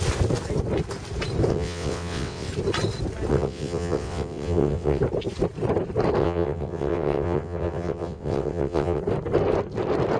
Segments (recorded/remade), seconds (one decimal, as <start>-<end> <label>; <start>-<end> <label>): 0.0-1.5 recorded; 1.5-2.5 remade; 2.5-3.3 recorded; 3.3-5.0 remade; 5.0-6.2 recorded; 6.2-9.0 remade; 9.0-10.2 recorded